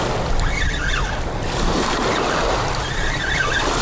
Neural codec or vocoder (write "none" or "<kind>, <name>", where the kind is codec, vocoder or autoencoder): none